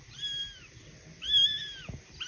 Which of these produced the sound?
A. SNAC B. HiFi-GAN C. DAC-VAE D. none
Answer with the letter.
D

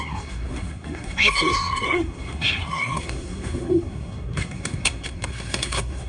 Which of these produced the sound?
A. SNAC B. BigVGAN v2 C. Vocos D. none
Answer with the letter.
A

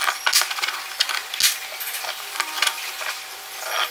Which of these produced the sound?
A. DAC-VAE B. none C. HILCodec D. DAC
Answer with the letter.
B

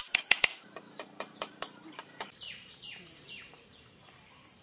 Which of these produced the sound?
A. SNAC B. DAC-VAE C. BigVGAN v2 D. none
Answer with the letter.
C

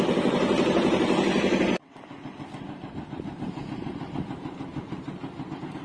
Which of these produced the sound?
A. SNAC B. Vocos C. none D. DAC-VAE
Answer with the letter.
C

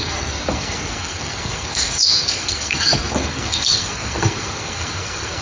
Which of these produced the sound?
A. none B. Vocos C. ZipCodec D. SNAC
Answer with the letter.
D